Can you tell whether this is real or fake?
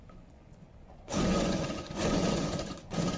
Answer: fake